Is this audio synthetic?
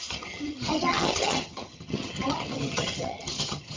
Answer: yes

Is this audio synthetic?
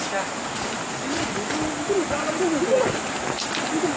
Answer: no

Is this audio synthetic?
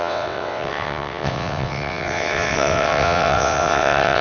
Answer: yes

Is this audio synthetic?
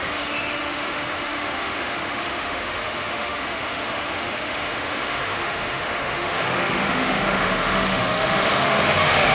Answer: yes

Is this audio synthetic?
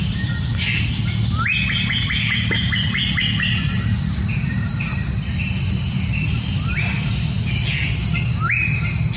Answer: no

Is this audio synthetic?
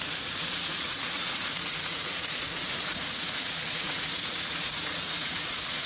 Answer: yes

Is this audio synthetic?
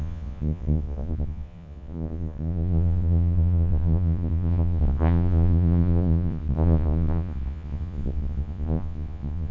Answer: yes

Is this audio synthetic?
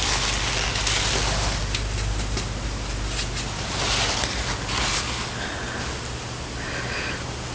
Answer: no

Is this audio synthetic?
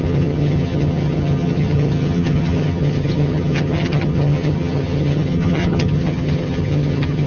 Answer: yes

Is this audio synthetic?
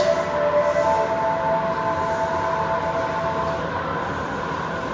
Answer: no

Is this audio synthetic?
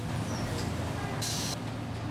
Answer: no